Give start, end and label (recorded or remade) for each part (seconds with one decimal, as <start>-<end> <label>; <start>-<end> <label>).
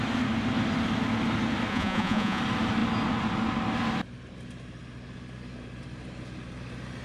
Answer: 0.0-1.7 recorded; 1.7-2.4 remade; 2.4-7.0 recorded